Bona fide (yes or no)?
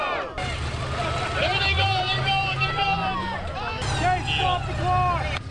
yes